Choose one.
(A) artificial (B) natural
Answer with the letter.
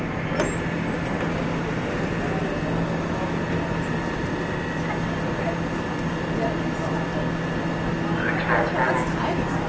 B